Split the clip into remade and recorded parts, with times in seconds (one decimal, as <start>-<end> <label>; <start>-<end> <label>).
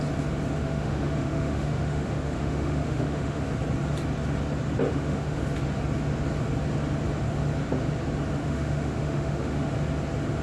0.0-0.6 recorded; 0.6-3.4 remade; 3.4-4.9 recorded; 4.9-5.4 remade; 5.4-8.4 recorded; 8.4-9.7 remade; 9.7-10.4 recorded